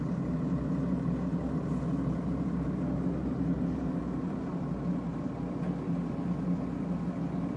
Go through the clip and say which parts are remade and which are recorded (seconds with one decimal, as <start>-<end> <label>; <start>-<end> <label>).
0.0-7.6 recorded